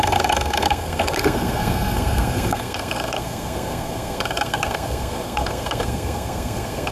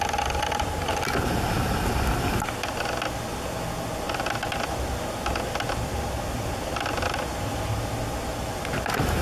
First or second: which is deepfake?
first